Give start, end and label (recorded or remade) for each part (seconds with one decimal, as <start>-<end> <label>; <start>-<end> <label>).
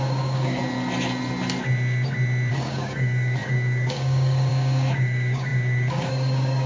0.0-0.6 remade; 0.6-2.5 recorded; 2.5-6.7 remade